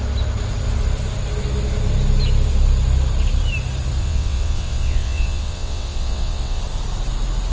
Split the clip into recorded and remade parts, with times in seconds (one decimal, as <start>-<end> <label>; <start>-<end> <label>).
0.0-4.0 recorded; 4.0-6.6 remade; 6.6-7.5 recorded